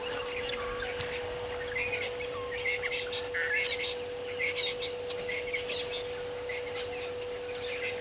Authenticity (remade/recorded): recorded